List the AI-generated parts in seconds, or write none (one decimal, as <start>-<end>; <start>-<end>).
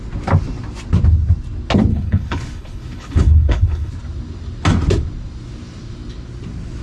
1.9-3.9